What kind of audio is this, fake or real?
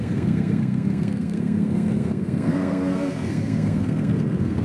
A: fake